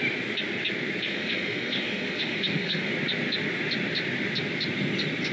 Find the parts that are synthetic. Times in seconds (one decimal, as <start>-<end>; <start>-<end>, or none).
1.1-2.9